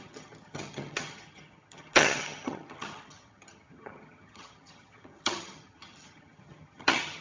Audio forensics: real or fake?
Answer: fake